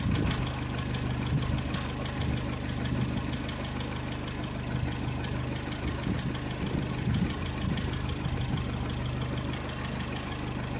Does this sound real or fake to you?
real